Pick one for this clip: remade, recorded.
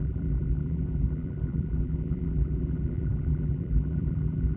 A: remade